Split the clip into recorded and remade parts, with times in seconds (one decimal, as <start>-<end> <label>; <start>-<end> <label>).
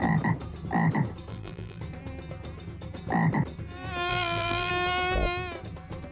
0.0-1.3 recorded; 1.3-1.8 remade; 1.8-4.1 recorded; 4.1-4.7 remade; 4.7-6.1 recorded